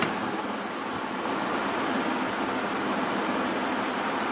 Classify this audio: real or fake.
real